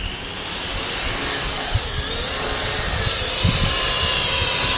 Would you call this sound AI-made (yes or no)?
no